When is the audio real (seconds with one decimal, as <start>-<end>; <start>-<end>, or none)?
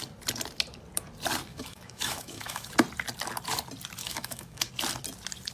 0.0-1.5; 2.7-4.0; 4.7-5.5